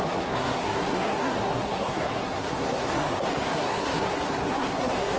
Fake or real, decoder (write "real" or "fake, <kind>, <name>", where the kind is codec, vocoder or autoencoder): fake, codec, SNAC